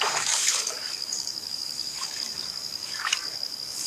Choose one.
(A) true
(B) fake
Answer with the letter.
B